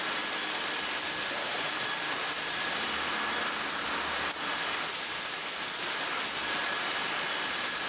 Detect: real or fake real